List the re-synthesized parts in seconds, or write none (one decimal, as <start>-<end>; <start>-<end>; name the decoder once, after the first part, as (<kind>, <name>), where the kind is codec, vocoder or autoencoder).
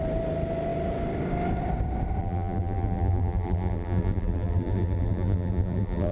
2.2-6.1 (vocoder, BigVGAN v2)